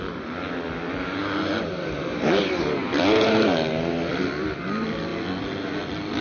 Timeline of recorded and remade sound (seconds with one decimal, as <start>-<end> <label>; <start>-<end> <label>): 0.0-6.2 recorded